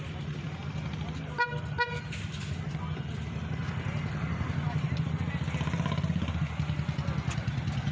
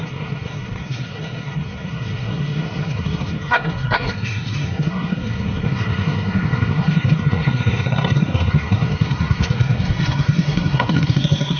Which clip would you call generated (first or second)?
second